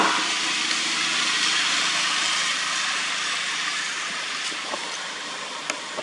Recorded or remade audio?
recorded